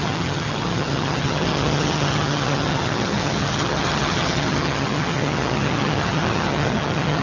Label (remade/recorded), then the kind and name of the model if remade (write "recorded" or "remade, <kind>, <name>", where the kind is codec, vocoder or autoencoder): remade, vocoder, HiFi-GAN